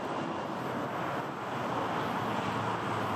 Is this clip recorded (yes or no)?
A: yes